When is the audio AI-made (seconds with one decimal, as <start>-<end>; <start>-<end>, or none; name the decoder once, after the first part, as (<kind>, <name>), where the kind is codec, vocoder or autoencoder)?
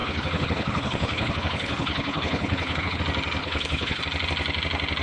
0.0-3.0 (codec, HILCodec); 3.4-4.0